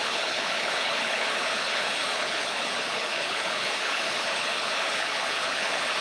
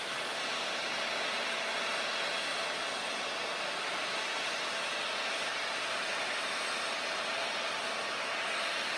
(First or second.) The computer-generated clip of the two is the first